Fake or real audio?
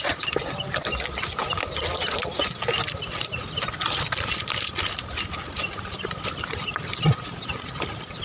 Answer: real